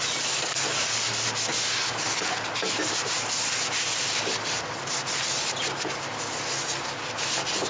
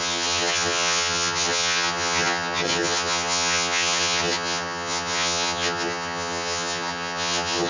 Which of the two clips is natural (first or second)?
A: first